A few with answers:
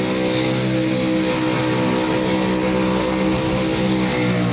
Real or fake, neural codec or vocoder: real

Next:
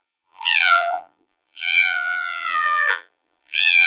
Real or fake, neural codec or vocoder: fake, vocoder, BigVGAN v2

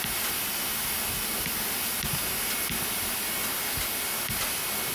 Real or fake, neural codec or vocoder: real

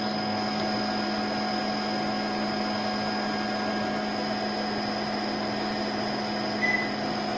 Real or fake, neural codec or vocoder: real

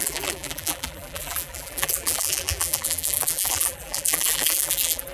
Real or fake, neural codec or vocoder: fake, vocoder, BigVGAN v2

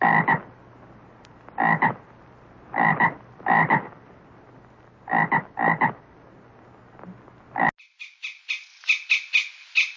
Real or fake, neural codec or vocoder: real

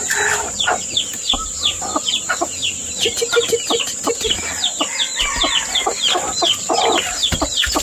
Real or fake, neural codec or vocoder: real